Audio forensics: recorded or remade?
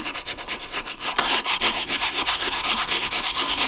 remade